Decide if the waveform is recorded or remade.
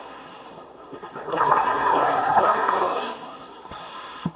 remade